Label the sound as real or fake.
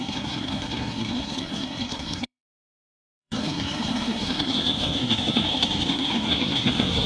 fake